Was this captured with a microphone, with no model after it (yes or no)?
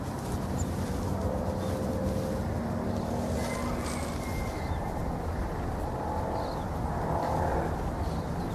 yes